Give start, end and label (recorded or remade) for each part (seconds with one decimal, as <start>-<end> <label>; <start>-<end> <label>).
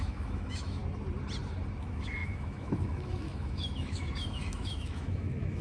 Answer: 0.0-0.8 remade; 0.8-1.8 recorded; 1.8-5.6 remade